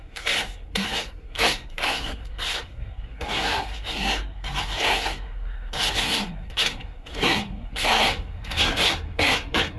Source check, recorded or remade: remade